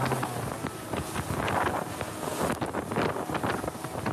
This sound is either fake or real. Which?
real